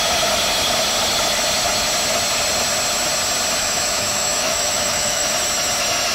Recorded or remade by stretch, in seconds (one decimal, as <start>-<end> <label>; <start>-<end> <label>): 0.0-3.6 recorded; 3.6-5.3 remade; 5.3-6.1 recorded